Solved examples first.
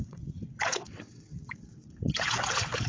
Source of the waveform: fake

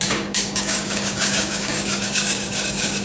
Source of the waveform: fake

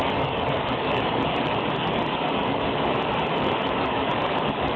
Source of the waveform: fake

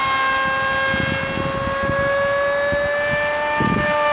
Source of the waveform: real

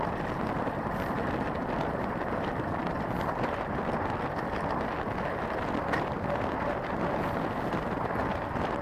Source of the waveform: real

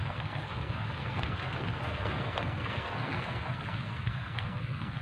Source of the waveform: fake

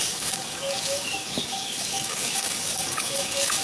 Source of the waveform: fake